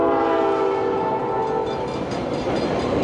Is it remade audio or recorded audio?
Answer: recorded